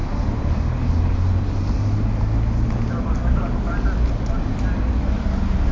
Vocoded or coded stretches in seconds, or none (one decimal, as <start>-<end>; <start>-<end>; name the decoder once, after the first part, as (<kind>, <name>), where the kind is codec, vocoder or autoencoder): none